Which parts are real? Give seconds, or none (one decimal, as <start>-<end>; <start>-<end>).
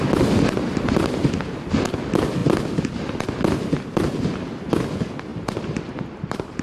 0.0-5.3